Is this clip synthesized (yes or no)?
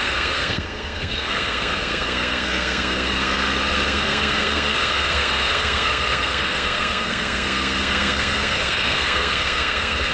yes